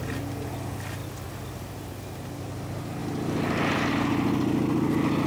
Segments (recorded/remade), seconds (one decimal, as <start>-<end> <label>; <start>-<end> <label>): 0.0-5.3 recorded